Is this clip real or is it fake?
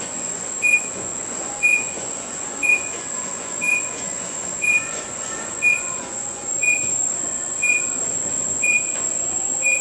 fake